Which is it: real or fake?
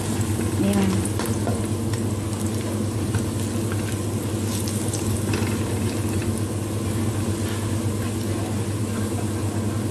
real